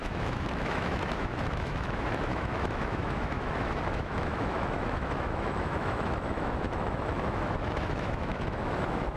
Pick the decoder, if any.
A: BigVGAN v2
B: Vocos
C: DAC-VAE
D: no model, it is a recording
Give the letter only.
C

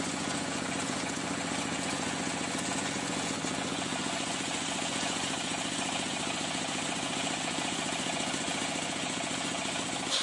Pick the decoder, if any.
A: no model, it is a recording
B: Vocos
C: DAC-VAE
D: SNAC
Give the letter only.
B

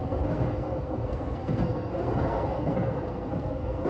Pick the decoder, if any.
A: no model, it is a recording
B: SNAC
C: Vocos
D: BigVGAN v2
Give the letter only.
B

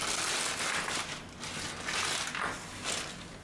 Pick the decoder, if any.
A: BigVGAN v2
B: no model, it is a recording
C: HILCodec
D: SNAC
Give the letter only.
B